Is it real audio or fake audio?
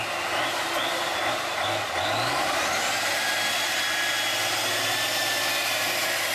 real